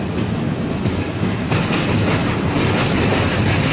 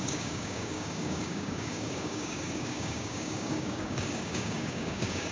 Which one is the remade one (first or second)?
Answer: second